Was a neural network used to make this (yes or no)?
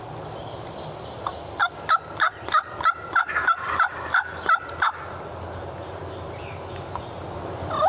no